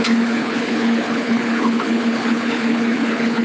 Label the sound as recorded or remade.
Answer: remade